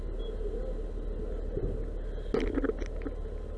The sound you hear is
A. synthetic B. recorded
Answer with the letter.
B